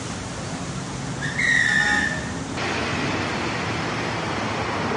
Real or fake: real